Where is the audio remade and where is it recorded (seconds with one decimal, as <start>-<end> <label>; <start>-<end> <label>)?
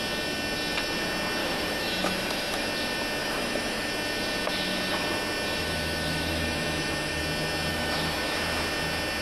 0.0-1.4 recorded; 1.4-2.7 remade; 2.7-3.2 recorded; 3.2-3.9 remade; 3.9-5.6 recorded; 5.6-7.2 remade; 7.2-7.7 recorded; 7.7-8.2 remade; 8.2-9.2 recorded